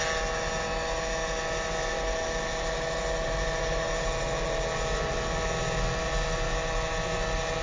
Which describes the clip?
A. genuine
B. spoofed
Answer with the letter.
A